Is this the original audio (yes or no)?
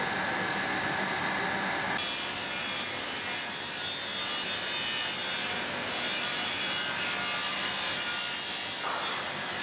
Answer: yes